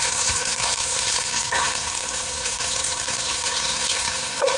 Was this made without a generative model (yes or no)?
no